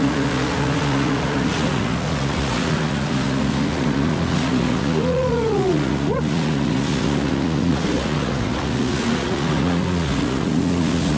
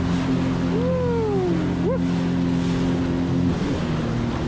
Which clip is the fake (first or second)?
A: first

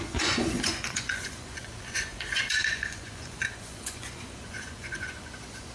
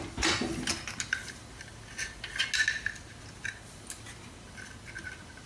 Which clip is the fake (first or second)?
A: first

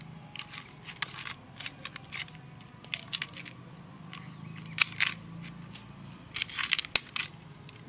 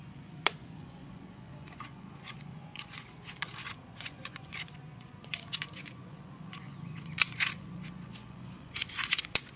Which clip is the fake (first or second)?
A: second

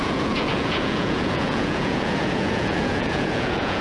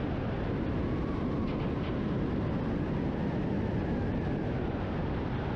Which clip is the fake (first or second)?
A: first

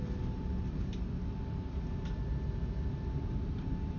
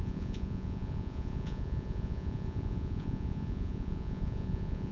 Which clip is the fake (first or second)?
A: second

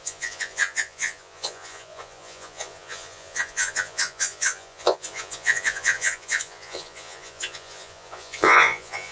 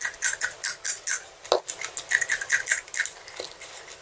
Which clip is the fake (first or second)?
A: first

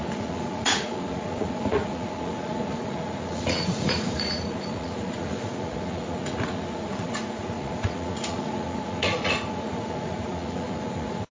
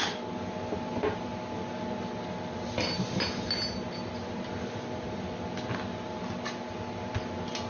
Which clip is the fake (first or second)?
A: first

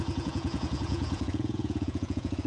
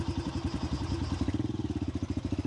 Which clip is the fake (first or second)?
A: first